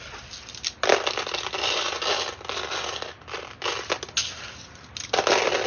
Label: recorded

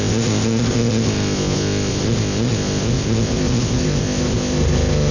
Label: remade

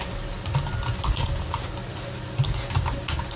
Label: recorded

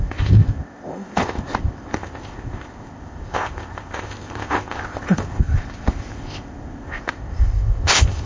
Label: remade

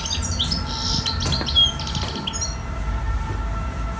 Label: recorded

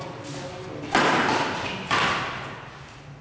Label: recorded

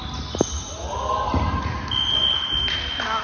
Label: recorded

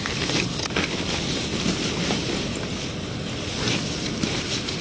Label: recorded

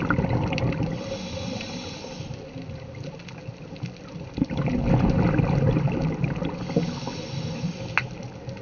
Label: recorded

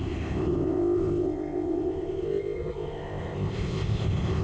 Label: remade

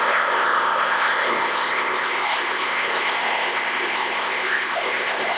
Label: remade